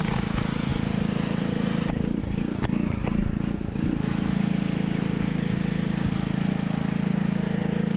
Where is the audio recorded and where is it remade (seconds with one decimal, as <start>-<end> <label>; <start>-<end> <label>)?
0.0-8.0 recorded